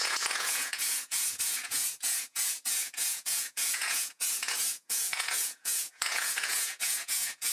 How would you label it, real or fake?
fake